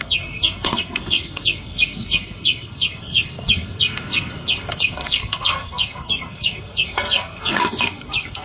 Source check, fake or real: fake